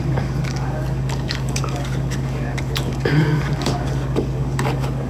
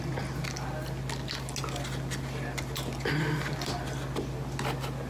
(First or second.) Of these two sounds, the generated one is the first